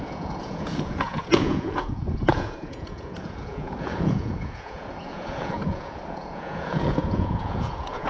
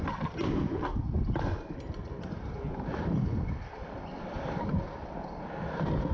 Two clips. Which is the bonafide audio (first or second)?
second